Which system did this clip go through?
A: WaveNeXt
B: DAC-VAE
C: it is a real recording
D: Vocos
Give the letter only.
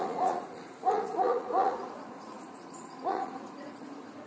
D